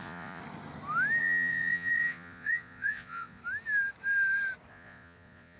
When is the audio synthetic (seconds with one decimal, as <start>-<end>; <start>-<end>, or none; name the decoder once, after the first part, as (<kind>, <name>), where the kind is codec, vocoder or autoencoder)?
0.0-0.4 (vocoder, Vocos); 1.2-3.4; 4.7-5.6